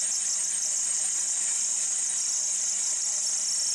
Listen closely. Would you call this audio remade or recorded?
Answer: recorded